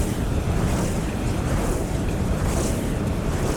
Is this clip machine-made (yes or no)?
yes